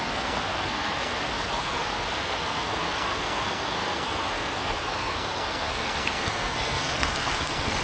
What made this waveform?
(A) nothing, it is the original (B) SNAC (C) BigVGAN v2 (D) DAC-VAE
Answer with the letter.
B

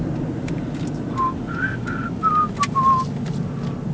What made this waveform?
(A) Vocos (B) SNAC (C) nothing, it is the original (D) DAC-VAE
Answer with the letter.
C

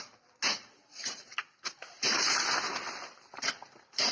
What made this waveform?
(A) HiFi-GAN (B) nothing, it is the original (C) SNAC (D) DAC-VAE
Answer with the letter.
B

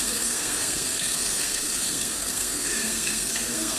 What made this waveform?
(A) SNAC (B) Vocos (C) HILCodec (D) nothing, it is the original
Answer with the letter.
A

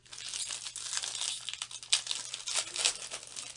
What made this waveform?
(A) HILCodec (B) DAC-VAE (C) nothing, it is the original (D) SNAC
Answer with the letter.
C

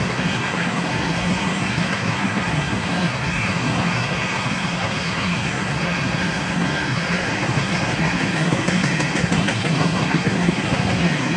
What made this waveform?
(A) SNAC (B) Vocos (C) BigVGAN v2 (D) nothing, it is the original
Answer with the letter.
A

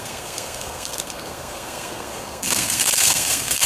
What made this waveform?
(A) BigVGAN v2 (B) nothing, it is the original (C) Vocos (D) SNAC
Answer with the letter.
D